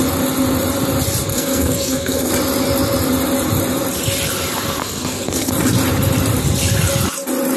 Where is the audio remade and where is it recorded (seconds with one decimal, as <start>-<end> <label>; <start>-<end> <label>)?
0.0-1.3 recorded; 1.3-2.3 remade; 2.3-4.8 recorded; 4.8-5.5 remade; 5.5-7.6 recorded